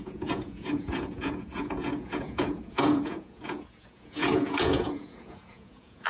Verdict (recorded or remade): remade